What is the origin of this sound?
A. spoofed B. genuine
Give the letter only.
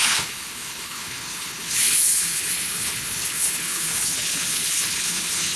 A